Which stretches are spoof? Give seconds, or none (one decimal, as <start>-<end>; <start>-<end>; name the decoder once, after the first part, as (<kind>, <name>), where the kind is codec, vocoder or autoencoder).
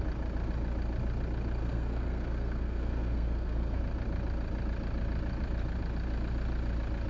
1.6-3.8 (codec, SNAC)